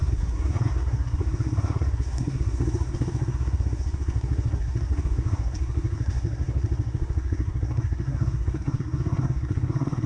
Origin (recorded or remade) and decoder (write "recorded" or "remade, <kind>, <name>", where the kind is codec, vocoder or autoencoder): remade, codec, SNAC